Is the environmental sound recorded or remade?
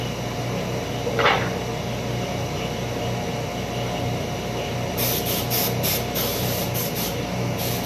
recorded